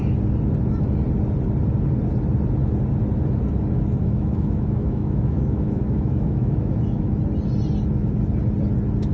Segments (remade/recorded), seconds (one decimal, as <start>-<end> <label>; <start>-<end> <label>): 0.0-4.0 recorded; 4.0-7.2 remade; 7.2-9.1 recorded